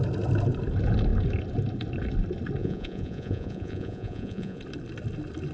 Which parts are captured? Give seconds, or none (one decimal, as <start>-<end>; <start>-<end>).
0.0-2.6; 4.6-5.5